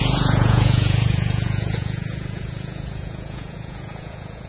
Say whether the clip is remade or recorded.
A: remade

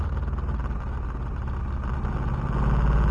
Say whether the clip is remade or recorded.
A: recorded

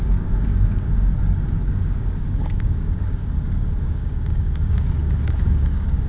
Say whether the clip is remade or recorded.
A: remade